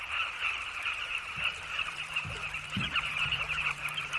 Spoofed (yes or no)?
yes